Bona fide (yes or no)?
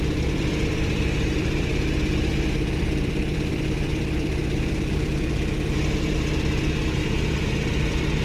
no